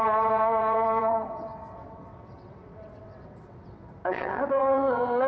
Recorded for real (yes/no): no